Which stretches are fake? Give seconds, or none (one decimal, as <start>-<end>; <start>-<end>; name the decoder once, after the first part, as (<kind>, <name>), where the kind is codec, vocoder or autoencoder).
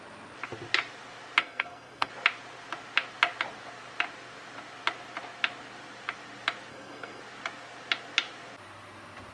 1.4-2.1 (codec, SNAC); 6.7-7.2